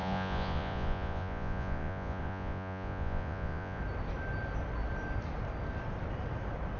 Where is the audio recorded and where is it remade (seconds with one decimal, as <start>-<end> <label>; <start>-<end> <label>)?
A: 0.0-3.8 remade; 3.8-6.8 recorded